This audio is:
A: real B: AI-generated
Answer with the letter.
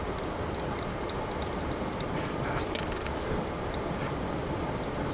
A